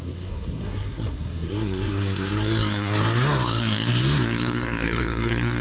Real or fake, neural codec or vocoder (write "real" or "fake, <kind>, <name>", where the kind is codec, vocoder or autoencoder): fake, codec, SNAC